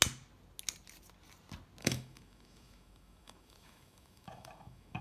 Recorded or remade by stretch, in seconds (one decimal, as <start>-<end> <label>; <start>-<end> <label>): 0.0-1.8 recorded; 1.8-5.0 remade